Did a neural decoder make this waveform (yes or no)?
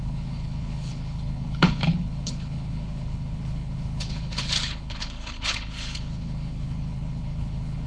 yes